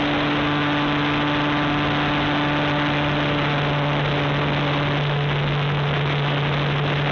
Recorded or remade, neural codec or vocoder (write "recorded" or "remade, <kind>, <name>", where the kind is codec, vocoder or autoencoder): recorded